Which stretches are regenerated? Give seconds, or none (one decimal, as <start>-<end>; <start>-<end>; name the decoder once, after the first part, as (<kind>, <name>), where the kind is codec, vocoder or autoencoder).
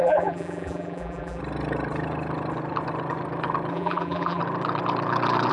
0.0-1.4 (vocoder, BigVGAN v2); 3.7-4.4